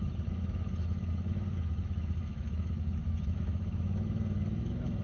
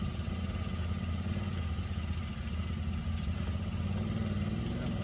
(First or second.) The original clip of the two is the second